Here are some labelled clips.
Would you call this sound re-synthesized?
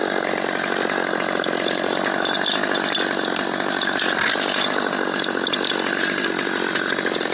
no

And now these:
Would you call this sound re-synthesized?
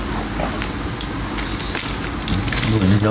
no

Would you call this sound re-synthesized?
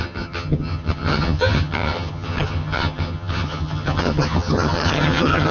yes